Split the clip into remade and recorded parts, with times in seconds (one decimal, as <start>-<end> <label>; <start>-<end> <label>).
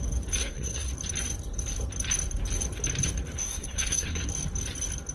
0.0-0.4 recorded; 0.4-0.9 remade; 0.9-3.4 recorded; 3.4-4.3 remade; 4.3-5.1 recorded